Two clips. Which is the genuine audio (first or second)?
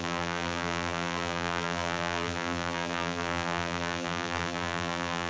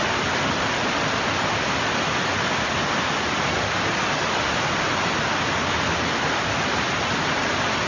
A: second